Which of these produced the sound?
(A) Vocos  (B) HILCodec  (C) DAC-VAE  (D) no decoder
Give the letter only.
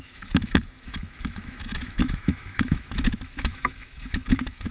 C